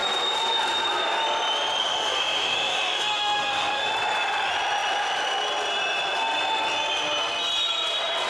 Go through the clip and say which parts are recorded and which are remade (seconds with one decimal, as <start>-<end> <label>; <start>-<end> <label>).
0.0-1.8 recorded; 1.8-3.9 remade; 3.9-8.3 recorded